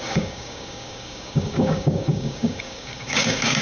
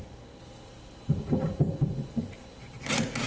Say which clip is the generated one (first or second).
first